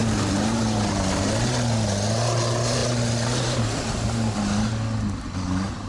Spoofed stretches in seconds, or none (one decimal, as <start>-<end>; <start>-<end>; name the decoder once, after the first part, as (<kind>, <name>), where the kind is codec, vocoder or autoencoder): none